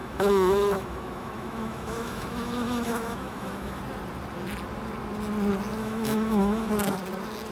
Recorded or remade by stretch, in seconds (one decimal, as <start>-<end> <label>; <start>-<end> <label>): 0.0-3.8 remade; 3.8-5.8 recorded; 5.8-6.7 remade; 6.7-7.5 recorded